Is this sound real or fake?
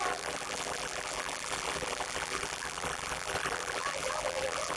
fake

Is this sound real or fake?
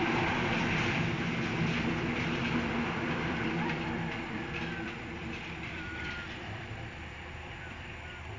fake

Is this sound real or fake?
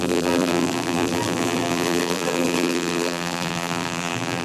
fake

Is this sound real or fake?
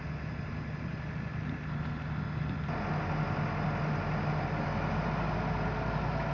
real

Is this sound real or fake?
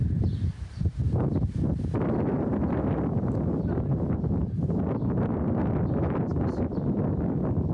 fake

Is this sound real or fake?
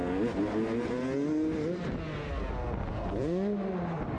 real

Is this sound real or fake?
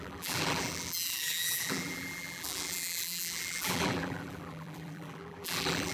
fake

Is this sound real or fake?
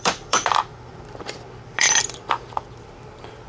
fake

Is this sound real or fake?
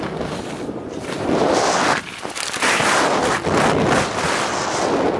real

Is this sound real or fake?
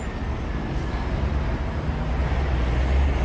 real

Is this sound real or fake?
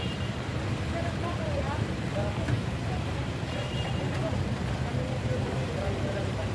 fake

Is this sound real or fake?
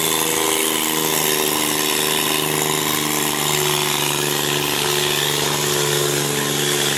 real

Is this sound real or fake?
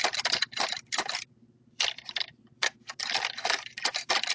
fake